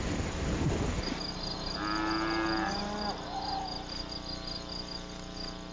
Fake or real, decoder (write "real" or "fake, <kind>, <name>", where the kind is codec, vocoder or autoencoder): real